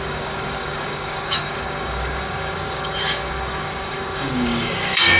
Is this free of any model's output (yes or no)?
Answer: no